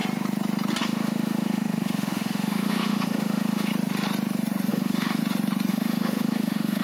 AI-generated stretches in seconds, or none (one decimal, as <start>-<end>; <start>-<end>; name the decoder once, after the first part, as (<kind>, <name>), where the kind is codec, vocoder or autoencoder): 0.8-3.7 (autoencoder, DAC-VAE); 4.7-5.2; 5.7-6.8